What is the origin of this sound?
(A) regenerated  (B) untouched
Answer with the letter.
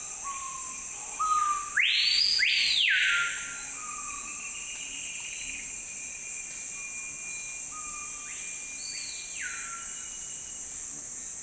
B